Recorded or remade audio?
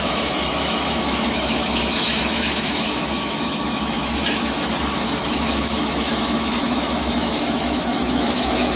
remade